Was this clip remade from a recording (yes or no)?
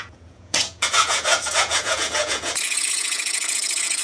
yes